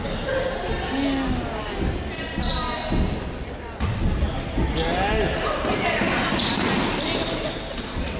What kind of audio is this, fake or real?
real